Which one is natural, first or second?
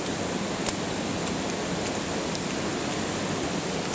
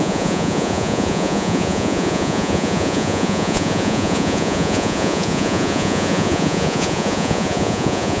first